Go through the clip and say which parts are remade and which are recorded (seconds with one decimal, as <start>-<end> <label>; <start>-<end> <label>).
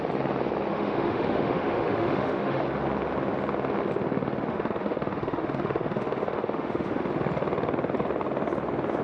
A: 0.0-0.7 recorded; 0.7-2.6 remade; 2.6-4.5 recorded; 4.5-7.0 remade; 7.0-9.0 recorded